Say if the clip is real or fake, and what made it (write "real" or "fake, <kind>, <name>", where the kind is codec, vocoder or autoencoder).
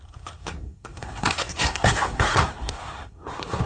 fake, codec, SNAC